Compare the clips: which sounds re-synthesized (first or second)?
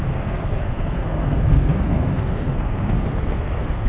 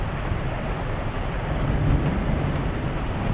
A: first